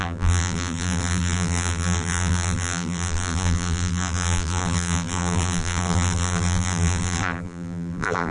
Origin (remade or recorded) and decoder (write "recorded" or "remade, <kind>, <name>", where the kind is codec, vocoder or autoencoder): remade, vocoder, BigVGAN v2